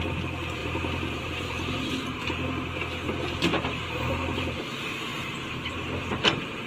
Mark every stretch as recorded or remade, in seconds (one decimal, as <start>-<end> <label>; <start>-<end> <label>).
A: 0.0-0.6 recorded; 0.6-2.2 remade; 2.2-3.5 recorded; 3.5-4.6 remade; 4.6-5.1 recorded; 5.1-5.7 remade; 5.7-6.7 recorded